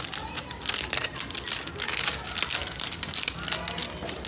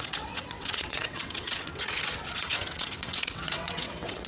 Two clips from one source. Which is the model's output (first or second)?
second